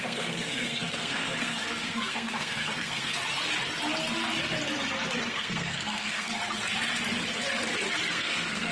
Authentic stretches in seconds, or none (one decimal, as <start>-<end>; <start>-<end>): 3.1-5.2; 6.3-8.1